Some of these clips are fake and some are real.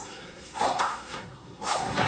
fake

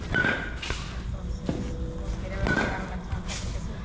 real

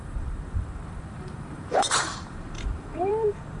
fake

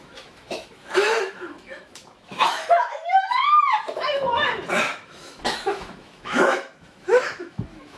fake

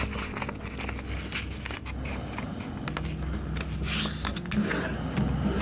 real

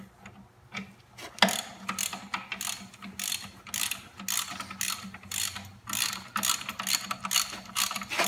real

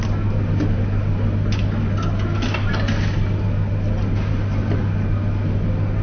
real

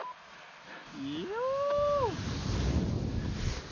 real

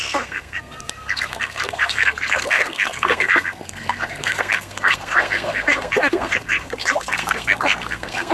fake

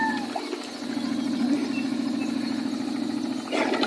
real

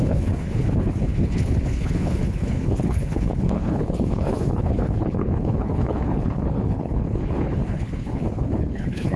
fake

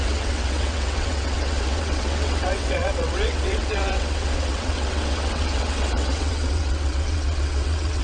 fake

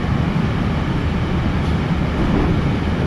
real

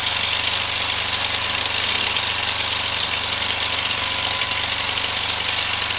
fake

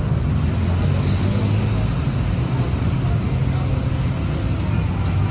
real